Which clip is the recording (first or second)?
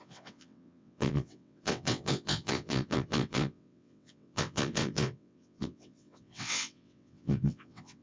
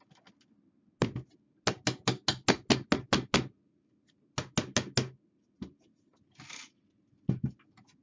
second